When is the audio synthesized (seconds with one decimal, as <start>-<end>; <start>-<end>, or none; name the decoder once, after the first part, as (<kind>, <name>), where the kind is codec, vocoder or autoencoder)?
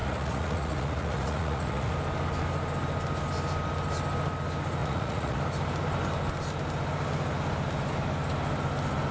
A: 0.0-1.9 (vocoder, Vocos); 4.8-5.4